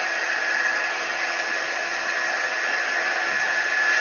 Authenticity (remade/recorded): recorded